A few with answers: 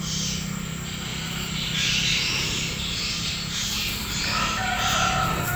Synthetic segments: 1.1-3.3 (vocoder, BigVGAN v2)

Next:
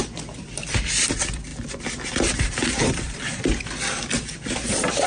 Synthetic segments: 0.0-1.5 (vocoder, BigVGAN v2); 2.8-5.1

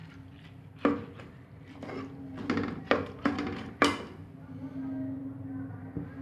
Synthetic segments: 5.2-5.8 (vocoder, BigVGAN v2)

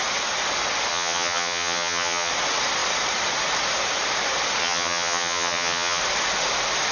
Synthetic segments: 0.9-2.3 (vocoder, HiFi-GAN); 4.6-6.0

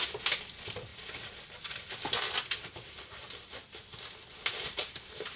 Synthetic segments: none

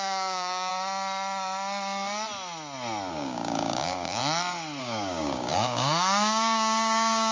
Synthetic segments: 0.0-0.7 (codec, DAC); 3.1-4.2; 4.8-7.3

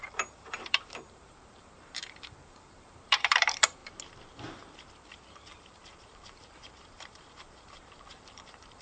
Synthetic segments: 0.0-3.8 (vocoder, BigVGAN v2); 4.3-8.8